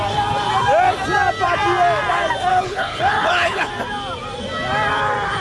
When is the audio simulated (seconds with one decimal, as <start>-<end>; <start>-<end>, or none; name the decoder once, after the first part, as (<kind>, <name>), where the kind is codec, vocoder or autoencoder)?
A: 2.5-3.7 (codec, HILCodec)